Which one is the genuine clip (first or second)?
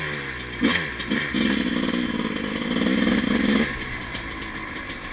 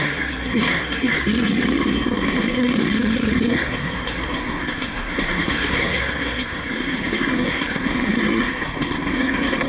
first